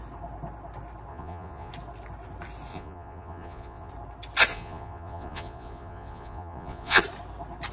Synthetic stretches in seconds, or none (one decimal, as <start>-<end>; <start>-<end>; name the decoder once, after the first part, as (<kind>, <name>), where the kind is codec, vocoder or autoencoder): 1.1-1.7 (vocoder, Vocos); 2.7-3.9; 4.5-7.0